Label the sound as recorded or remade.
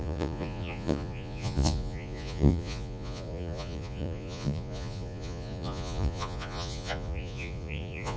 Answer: remade